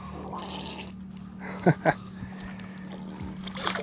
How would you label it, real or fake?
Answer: real